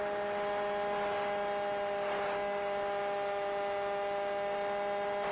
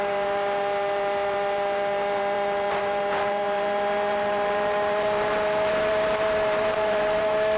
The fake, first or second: second